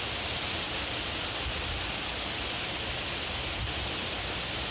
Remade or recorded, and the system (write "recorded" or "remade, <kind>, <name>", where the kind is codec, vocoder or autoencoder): recorded